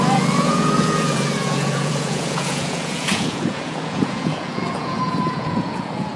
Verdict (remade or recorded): remade